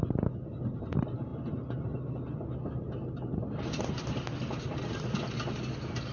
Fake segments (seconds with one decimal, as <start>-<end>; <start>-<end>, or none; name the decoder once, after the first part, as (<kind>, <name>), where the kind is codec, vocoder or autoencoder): none